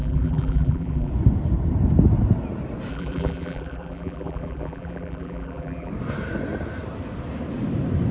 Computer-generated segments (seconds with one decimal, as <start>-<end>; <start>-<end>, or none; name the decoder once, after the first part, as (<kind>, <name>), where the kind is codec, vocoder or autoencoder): 0.0-1.1 (vocoder, BigVGAN v2); 2.9-5.9